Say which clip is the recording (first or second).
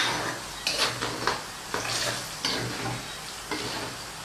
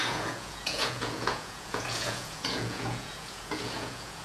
first